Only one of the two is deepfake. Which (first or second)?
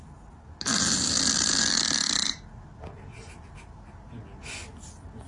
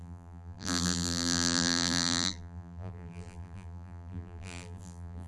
second